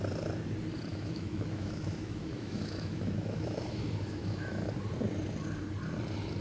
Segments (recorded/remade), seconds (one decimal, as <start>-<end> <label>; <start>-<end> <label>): 0.0-0.9 recorded; 0.9-4.7 remade; 4.7-6.4 recorded